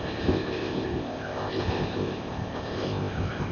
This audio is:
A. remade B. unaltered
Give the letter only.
A